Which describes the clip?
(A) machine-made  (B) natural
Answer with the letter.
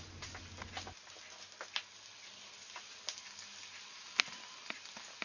B